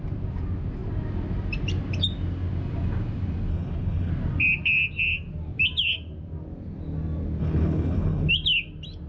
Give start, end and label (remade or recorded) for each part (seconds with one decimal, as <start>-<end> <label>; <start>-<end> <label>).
0.0-3.5 recorded; 3.5-4.1 remade; 4.1-7.4 recorded; 7.4-8.3 remade; 8.3-9.1 recorded